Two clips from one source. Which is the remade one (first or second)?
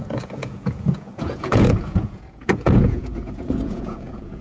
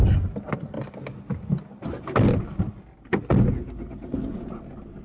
first